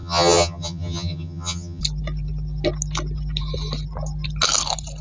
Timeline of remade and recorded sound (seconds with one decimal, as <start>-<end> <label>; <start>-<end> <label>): 0.0-1.8 remade; 1.8-5.0 recorded